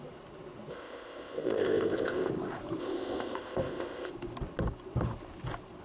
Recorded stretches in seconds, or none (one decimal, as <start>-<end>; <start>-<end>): 0.0-0.7; 2.3-2.8; 4.1-5.8